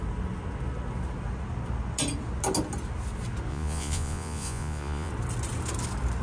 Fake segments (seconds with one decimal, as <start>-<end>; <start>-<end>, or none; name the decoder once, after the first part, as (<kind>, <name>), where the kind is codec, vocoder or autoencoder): 3.5-5.1 (vocoder, Vocos)

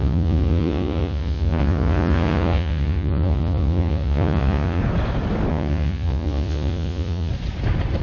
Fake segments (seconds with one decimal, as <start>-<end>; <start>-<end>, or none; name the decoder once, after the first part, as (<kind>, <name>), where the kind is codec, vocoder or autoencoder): 0.0-4.8 (vocoder, Vocos); 5.5-7.3

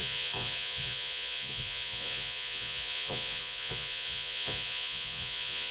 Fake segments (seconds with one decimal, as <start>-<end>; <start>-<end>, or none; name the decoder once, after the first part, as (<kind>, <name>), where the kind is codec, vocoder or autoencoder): 0.0-5.7 (vocoder, Vocos)

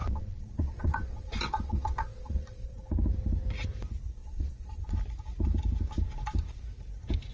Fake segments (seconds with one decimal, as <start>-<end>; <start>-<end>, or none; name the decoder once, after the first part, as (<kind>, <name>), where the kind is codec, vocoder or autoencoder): 0.0-2.8 (vocoder, Vocos); 4.2-4.8

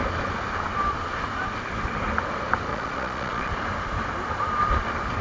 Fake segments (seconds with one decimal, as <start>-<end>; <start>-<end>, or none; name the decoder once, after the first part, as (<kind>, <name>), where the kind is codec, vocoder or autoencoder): 2.7-3.5 (vocoder, Vocos)